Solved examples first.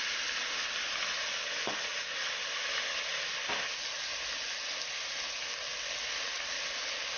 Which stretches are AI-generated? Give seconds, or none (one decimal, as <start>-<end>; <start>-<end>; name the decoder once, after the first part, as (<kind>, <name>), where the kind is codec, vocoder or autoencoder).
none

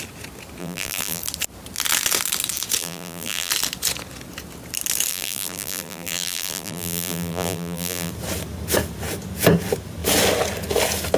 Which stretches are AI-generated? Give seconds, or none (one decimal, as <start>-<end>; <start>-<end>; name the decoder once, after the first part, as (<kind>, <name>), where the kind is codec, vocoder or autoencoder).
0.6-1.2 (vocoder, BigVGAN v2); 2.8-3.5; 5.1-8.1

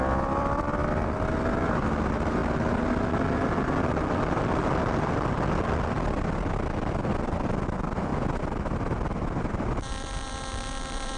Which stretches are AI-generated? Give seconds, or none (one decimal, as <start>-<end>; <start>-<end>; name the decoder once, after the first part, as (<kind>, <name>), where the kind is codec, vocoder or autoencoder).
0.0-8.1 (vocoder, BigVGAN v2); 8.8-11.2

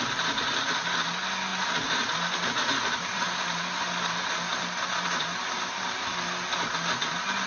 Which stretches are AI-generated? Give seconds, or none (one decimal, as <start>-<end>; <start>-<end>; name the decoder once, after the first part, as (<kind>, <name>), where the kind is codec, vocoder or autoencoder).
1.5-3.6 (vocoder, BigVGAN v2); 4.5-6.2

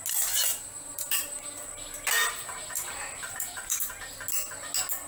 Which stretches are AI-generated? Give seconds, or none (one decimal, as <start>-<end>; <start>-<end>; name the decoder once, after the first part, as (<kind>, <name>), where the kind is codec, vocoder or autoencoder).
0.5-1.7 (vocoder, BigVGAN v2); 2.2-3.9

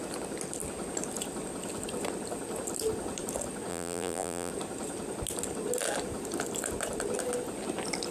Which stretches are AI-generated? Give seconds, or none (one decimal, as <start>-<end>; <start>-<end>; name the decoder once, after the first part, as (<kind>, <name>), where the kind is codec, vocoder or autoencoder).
3.7-4.5 (vocoder, BigVGAN v2)